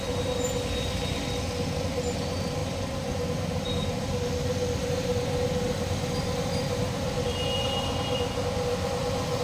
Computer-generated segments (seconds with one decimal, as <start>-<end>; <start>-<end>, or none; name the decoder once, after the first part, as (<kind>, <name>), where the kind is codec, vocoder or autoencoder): none